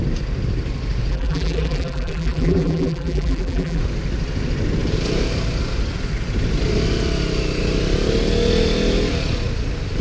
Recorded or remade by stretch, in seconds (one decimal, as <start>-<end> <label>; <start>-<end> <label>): 0.0-1.1 recorded; 1.1-3.8 remade; 3.8-10.0 recorded